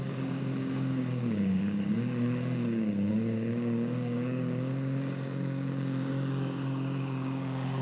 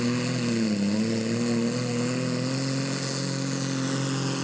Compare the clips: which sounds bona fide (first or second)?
second